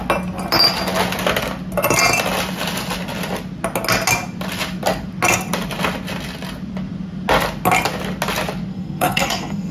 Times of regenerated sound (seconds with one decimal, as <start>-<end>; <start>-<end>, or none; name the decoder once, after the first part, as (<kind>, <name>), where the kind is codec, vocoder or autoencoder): 8.7-9.7 (codec, SNAC)